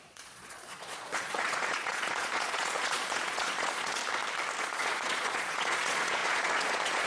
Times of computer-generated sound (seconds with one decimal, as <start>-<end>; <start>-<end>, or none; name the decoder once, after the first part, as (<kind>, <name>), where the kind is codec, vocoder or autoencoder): 0.0-4.0 (vocoder, Vocos); 4.6-7.1